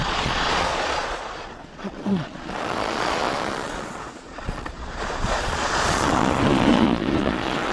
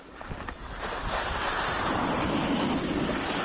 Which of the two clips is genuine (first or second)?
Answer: second